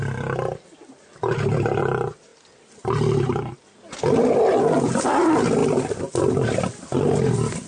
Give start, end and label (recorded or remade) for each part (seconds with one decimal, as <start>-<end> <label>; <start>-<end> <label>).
0.0-7.7 recorded